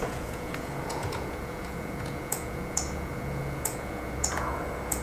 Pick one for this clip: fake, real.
fake